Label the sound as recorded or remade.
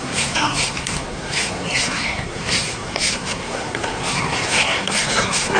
remade